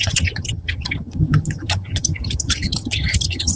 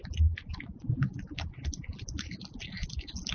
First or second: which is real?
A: second